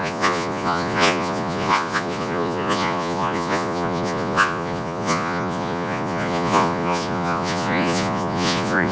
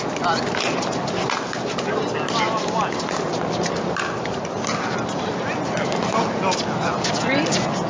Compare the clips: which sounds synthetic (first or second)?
first